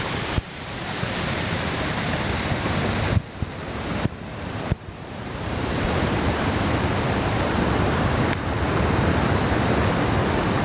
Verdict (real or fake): fake